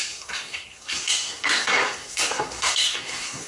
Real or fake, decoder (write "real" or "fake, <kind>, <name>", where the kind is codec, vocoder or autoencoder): fake, codec, SNAC